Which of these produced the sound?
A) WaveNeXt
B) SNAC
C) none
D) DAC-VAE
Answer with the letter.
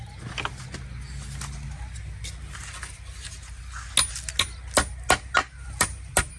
C